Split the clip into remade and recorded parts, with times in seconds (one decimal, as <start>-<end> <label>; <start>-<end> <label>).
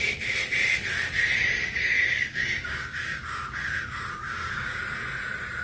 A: 0.0-1.4 recorded; 1.4-4.8 remade; 4.8-5.6 recorded